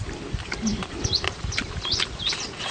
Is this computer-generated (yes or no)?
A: no